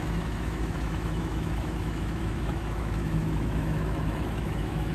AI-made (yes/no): yes